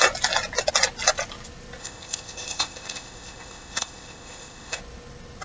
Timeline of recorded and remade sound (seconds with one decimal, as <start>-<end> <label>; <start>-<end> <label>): 0.0-1.8 recorded; 1.8-4.8 remade; 4.8-5.4 recorded